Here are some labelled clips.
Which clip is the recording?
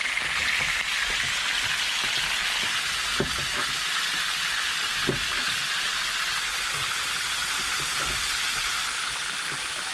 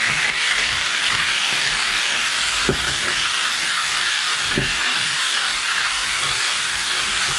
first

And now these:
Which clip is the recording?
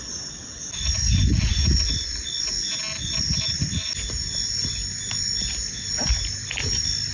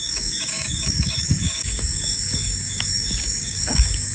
first